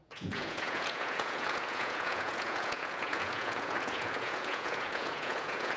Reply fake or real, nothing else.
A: fake